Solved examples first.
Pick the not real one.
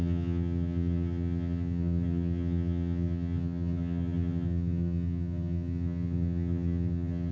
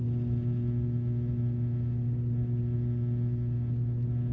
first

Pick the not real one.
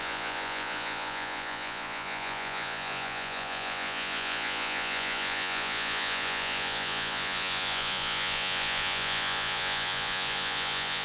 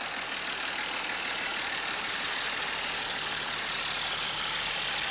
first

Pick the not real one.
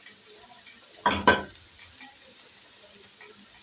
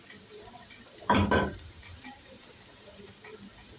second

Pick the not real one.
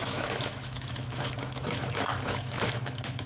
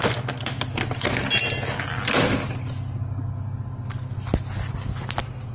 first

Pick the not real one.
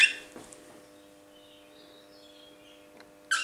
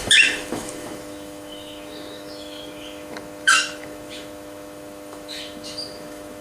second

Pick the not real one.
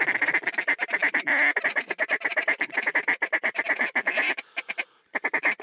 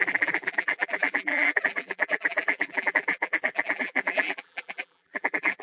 second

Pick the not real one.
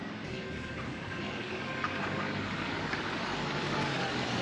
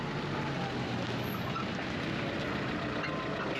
first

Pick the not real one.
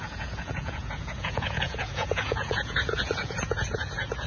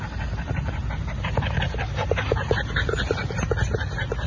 first